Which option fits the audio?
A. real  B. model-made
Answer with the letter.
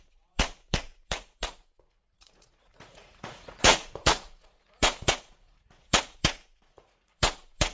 B